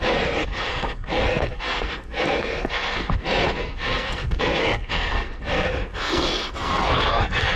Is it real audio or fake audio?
fake